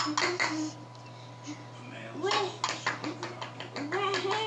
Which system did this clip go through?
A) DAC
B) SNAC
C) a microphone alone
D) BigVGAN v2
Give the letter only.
C